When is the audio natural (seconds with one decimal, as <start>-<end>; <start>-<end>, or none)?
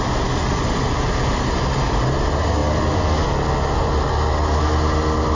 0.0-5.3